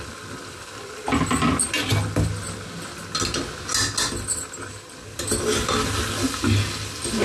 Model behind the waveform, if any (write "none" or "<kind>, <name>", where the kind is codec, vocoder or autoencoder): none